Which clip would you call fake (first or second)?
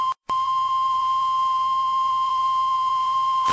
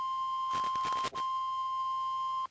first